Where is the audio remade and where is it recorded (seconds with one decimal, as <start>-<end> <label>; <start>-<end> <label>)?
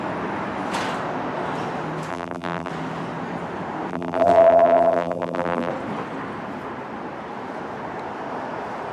0.0-2.1 recorded; 2.1-2.7 remade; 2.7-3.9 recorded; 3.9-5.7 remade; 5.7-8.9 recorded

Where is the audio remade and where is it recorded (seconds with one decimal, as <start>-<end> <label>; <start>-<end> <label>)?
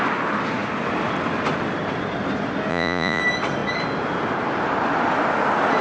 0.0-2.7 recorded; 2.7-3.2 remade; 3.2-5.8 recorded